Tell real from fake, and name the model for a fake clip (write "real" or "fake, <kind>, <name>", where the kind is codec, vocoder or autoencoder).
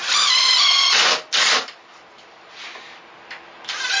real